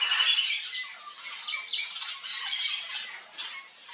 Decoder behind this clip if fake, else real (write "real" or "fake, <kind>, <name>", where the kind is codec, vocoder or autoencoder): real